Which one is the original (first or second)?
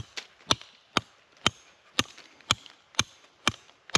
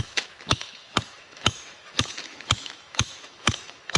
first